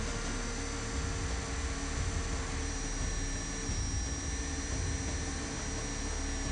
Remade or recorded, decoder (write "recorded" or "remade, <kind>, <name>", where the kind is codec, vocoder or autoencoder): recorded